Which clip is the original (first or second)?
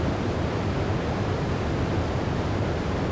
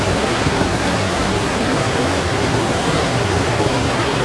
first